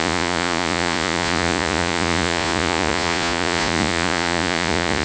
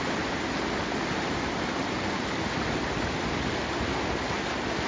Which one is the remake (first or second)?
first